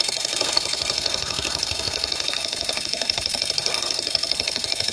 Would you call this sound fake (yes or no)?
yes